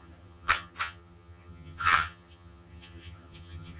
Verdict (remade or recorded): remade